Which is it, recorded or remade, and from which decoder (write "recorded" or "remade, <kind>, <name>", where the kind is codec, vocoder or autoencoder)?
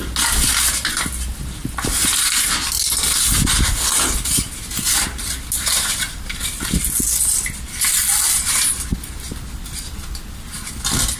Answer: recorded